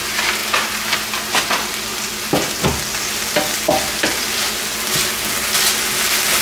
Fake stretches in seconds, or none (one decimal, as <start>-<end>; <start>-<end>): none